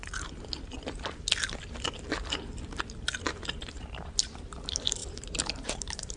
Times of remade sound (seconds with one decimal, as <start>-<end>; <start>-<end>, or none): 3.7-5.0; 5.5-6.2